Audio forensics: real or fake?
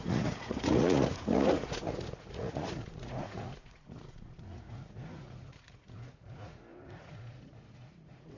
fake